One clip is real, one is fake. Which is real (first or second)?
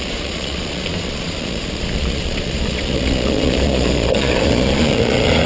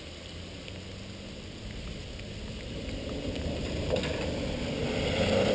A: second